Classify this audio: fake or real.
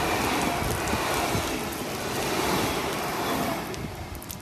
real